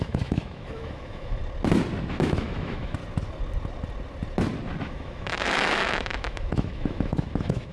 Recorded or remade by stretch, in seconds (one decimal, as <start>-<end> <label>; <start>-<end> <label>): 0.0-1.4 remade; 1.4-2.1 recorded; 2.1-3.0 remade; 3.0-4.8 recorded; 4.8-7.7 remade